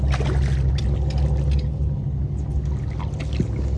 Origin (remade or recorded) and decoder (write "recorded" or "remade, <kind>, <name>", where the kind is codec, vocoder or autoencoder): recorded